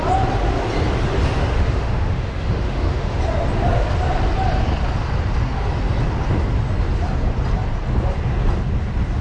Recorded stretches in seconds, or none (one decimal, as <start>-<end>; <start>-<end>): 0.0-1.4; 3.2-9.2